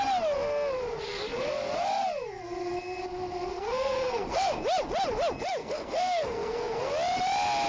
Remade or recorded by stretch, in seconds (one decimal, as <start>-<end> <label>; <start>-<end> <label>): 0.0-3.5 recorded; 3.5-4.6 remade; 4.6-5.6 recorded; 5.6-6.9 remade; 6.9-7.7 recorded